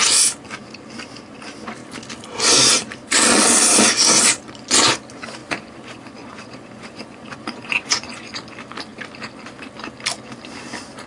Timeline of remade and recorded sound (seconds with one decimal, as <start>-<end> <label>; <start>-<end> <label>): 0.0-5.4 recorded; 5.4-8.5 remade; 8.5-11.1 recorded